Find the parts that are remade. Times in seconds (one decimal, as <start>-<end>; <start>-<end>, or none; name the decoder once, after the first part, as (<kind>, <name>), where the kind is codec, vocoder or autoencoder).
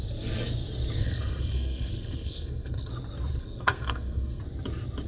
1.0-2.9 (codec, SNAC); 3.3-4.4